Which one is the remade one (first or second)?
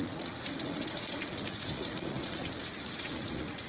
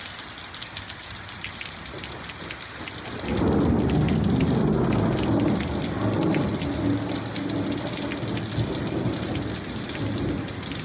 first